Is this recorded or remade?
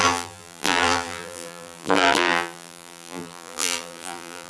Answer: remade